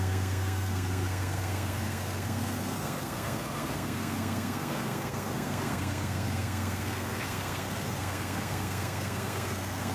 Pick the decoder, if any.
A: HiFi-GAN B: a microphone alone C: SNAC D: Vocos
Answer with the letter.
C